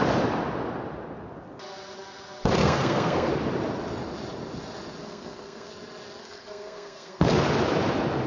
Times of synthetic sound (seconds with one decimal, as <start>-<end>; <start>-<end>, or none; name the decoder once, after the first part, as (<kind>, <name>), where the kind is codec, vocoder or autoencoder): 2.6-3.3 (codec, SNAC); 5.0-5.7; 6.2-7.3